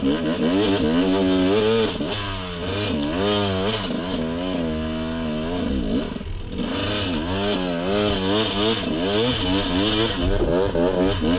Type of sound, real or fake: real